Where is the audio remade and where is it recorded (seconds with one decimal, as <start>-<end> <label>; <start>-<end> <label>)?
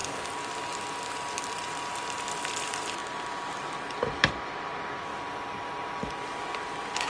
0.0-3.0 recorded; 3.0-4.6 remade; 4.6-7.1 recorded